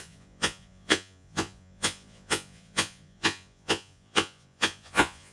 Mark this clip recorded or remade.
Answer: remade